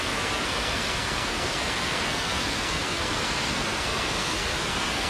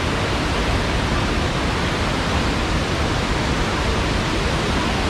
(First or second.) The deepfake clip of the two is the first